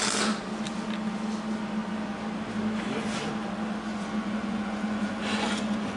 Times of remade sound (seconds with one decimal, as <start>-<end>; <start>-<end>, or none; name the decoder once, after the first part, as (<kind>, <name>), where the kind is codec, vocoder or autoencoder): 3.9-6.0 (vocoder, Vocos)